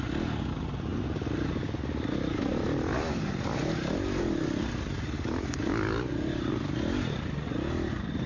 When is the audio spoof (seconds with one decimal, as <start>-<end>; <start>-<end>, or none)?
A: none

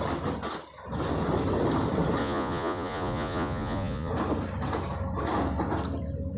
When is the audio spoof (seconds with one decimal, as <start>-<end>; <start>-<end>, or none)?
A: 2.2-4.1

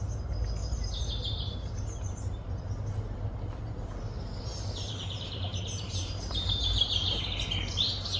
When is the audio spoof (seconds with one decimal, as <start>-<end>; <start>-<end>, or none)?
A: 0.6-2.5; 4.5-7.2

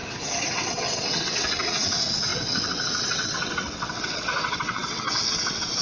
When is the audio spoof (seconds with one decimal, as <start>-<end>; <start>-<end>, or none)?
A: 0.5-5.8

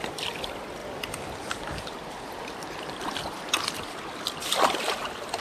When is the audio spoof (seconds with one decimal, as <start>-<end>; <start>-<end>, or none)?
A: none

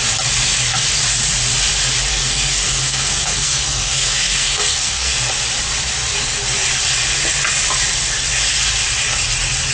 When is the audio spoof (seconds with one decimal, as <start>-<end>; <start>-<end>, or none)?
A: 2.1-5.3